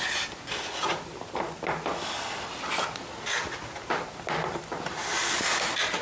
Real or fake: real